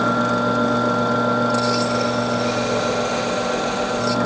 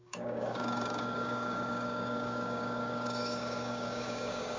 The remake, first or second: second